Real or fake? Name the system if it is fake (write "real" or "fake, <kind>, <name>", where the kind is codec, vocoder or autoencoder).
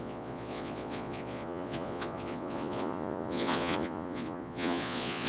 fake, vocoder, Vocos